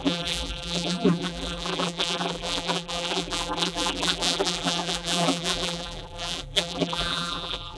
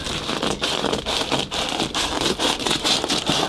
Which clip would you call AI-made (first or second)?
first